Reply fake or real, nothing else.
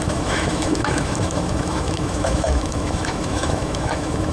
fake